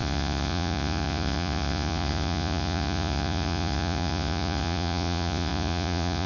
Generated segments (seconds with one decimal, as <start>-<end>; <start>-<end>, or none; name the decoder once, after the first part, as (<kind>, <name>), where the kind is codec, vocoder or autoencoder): 0.0-6.3 (vocoder, Vocos)